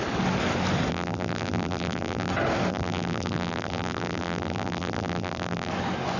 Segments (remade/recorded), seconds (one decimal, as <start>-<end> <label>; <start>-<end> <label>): 0.0-0.9 recorded; 0.9-2.3 remade; 2.3-2.7 recorded; 2.7-5.7 remade; 5.7-6.2 recorded